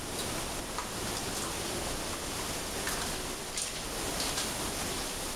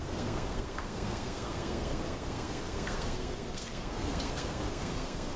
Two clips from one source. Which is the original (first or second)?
first